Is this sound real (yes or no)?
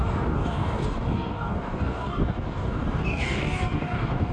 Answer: no